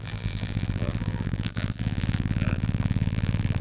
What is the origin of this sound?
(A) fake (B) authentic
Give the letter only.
A